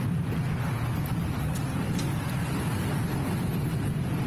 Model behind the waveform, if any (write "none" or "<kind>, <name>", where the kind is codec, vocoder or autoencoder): none